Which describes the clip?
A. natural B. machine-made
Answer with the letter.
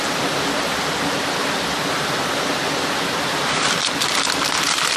A